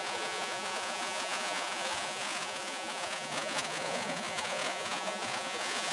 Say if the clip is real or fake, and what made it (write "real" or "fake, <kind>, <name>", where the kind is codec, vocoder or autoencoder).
fake, vocoder, Vocos